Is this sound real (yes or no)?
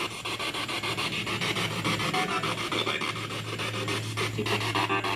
yes